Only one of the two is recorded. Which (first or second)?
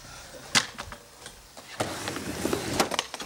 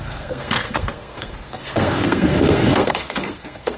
first